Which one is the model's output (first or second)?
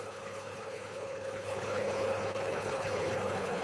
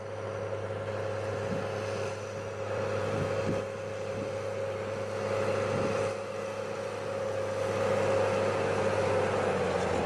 first